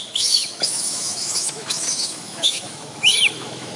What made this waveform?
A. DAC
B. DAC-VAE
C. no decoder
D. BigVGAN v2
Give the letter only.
B